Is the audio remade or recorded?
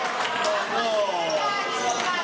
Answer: recorded